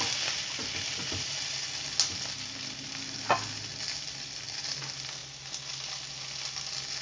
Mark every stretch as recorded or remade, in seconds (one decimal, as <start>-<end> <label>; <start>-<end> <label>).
0.0-7.0 recorded